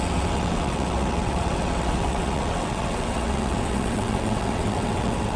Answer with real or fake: fake